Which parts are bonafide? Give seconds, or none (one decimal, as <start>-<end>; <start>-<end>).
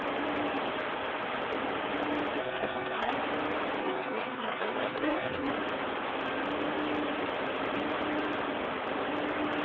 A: 0.0-2.4; 3.1-3.8; 5.5-9.6